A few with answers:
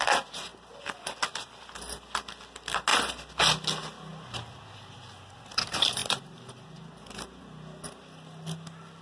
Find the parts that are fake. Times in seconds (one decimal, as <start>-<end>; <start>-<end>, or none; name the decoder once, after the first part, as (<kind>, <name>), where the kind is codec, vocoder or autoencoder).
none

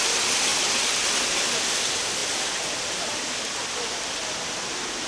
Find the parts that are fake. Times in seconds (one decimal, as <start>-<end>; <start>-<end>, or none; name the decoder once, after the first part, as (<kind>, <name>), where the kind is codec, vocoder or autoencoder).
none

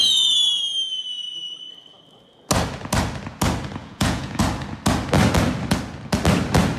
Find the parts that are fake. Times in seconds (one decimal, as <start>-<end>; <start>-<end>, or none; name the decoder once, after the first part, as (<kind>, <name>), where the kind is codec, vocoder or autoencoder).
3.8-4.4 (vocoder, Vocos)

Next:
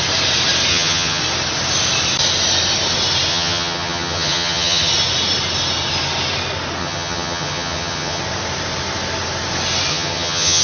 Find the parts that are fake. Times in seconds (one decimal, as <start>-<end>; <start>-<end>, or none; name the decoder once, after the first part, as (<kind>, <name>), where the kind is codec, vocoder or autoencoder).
0.7-1.2 (vocoder, HiFi-GAN); 3.3-4.9; 6.8-8.2; 9.9-10.6